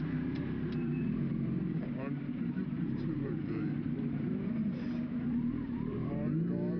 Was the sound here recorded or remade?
remade